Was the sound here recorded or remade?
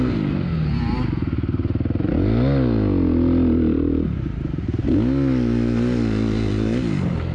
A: recorded